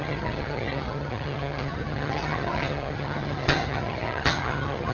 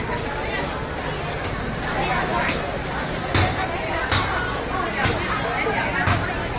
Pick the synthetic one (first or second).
first